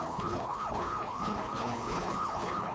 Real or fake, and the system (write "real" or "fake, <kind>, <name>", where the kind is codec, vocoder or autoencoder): fake, codec, HILCodec